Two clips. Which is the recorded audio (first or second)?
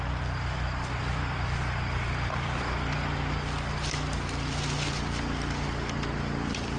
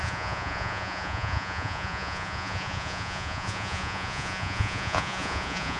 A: first